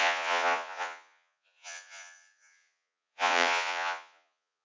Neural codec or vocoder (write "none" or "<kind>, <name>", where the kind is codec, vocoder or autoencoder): vocoder, Vocos